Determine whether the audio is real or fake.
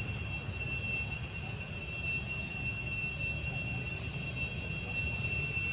real